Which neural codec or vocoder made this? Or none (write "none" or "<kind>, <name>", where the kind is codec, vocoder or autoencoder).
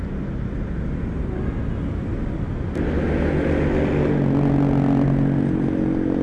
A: none